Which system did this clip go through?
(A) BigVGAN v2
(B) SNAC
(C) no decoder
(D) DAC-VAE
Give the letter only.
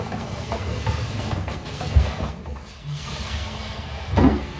B